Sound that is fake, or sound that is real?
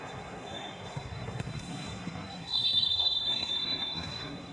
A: fake